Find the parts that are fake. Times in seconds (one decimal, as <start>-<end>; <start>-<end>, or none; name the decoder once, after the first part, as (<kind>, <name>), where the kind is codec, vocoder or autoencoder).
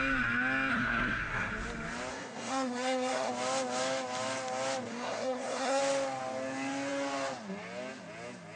0.7-1.5 (codec, SNAC); 2.1-3.3; 4.9-5.8